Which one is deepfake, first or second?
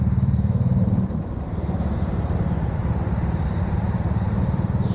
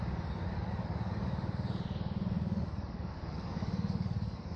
second